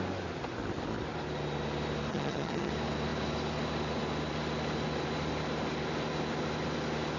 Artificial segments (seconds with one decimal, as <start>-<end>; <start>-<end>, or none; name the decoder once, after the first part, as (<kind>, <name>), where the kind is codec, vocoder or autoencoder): 2.1-2.7 (vocoder, HiFi-GAN)